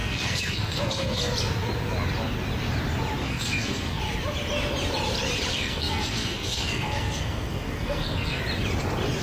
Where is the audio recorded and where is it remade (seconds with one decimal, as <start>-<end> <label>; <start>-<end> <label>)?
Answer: 0.0-1.2 remade; 1.2-3.2 recorded; 3.2-4.0 remade; 4.0-5.5 recorded; 5.5-8.4 remade; 8.4-9.2 recorded